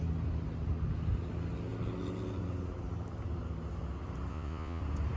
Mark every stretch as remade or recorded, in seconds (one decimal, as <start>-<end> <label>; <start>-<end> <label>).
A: 0.0-4.3 recorded; 4.3-4.8 remade; 4.8-5.2 recorded